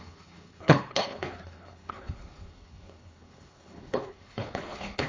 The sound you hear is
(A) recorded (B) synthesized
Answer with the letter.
B